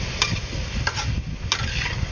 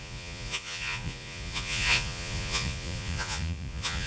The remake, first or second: second